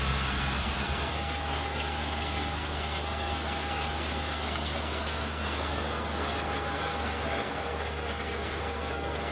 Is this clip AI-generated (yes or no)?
yes